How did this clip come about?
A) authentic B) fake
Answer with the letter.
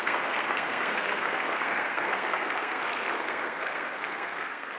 B